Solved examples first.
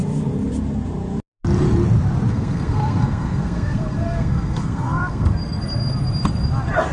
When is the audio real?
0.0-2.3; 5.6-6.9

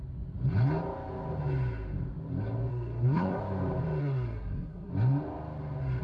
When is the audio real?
0.0-2.7; 3.4-4.0; 4.9-6.0

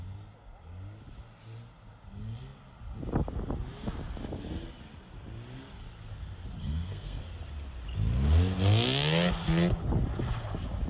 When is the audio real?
0.0-6.6; 7.2-10.9